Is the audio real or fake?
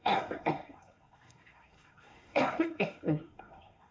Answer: fake